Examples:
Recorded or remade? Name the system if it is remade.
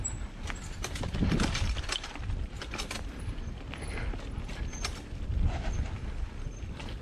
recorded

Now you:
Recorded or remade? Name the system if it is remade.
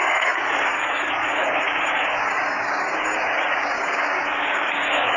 remade, codec, DAC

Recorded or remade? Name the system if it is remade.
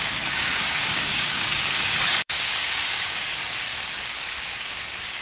remade, codec, DAC